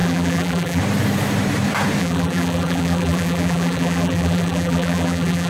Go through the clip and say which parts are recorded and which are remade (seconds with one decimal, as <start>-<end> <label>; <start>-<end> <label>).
0.0-0.8 remade; 0.8-2.0 recorded; 2.0-5.5 remade